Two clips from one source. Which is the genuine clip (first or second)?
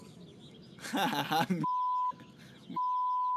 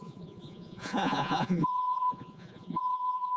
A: first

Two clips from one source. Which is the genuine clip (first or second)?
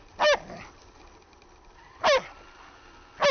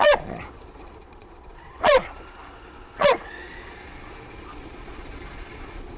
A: first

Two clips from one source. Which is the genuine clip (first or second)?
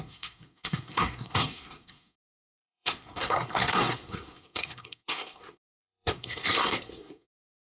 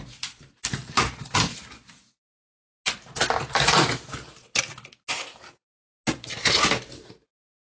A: second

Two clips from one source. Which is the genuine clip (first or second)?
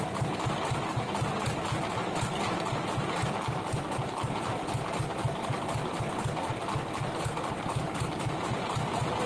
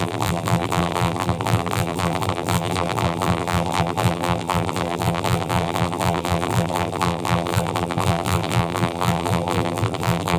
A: first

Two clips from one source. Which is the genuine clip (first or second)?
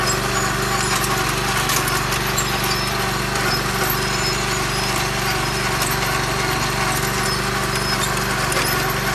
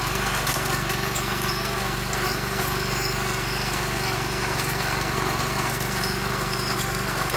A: first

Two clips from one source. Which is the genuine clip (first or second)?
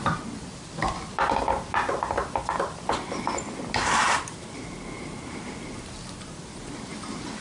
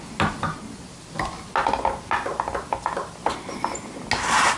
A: second